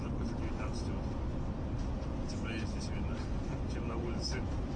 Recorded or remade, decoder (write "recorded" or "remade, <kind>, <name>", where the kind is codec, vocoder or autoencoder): recorded